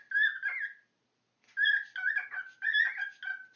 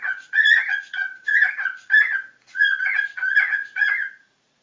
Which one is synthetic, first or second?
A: second